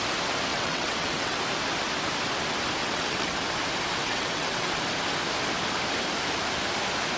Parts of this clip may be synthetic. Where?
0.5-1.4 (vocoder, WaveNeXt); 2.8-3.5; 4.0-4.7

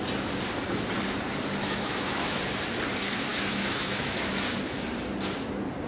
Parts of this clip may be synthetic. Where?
1.6-2.4 (autoencoder, DAC-VAE); 3.3-4.3

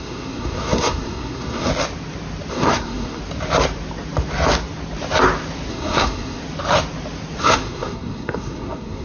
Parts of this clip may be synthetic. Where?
0.0-1.7 (codec, SNAC); 2.5-3.2; 5.7-6.4; 7.4-9.0

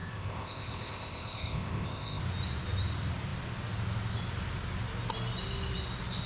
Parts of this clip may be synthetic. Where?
0.0-2.2 (codec, ZipCodec)

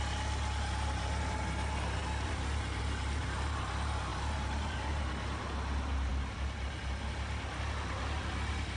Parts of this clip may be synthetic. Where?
none

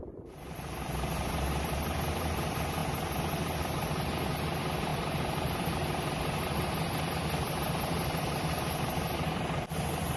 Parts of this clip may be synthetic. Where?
0.0-2.8 (vocoder, BigVGAN v2); 3.6-10.2

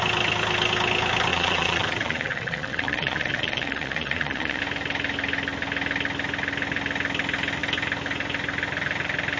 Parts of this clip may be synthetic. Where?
1.3-4.6 (vocoder, Vocos)

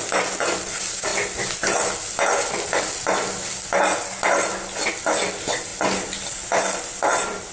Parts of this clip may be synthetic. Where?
none